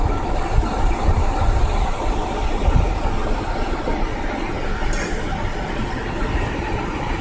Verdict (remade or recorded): recorded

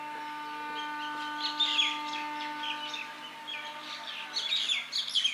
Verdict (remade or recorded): recorded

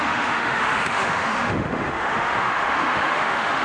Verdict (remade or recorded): remade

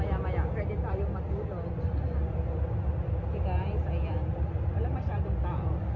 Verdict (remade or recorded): recorded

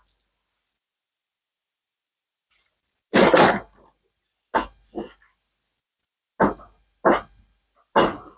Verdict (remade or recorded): recorded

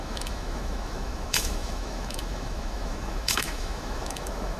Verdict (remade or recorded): remade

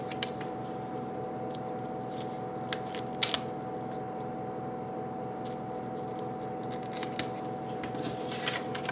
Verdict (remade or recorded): recorded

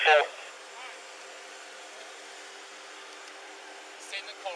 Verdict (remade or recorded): recorded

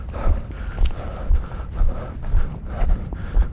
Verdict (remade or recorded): recorded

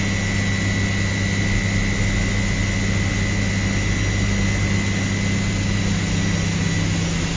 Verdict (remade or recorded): recorded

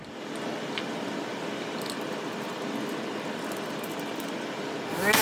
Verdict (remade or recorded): recorded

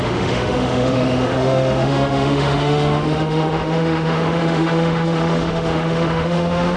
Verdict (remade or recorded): remade